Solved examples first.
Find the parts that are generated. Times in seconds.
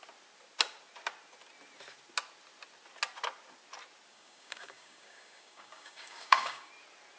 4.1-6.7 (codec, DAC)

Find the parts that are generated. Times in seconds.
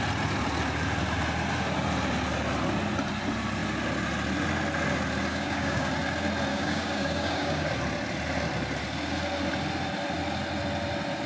5.3-5.9 (codec, DAC); 6.5-7.7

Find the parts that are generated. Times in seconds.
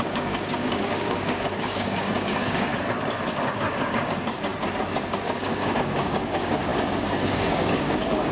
0.0-2.7 (codec, DAC); 3.3-4.5; 5.2-8.3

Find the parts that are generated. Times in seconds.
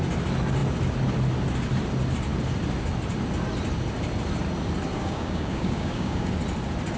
4.9-6.3 (codec, DAC)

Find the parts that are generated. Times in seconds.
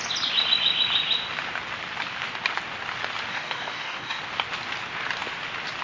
3.3-4.2 (codec, DAC)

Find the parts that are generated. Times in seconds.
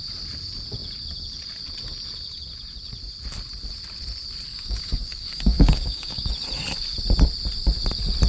4.5-6.3 (codec, DAC)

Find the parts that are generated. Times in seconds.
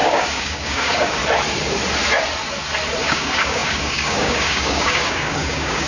0.0-1.2 (codec, DAC); 3.0-5.9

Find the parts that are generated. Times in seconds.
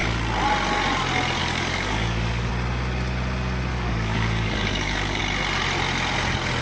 1.4-2.5 (codec, DAC); 3.7-5.2